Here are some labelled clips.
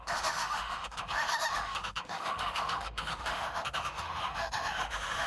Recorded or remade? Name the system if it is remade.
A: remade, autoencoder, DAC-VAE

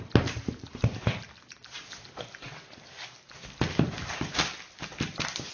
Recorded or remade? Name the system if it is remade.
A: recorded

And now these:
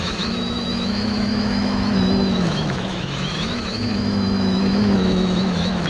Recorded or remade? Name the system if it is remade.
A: remade, autoencoder, DAC-VAE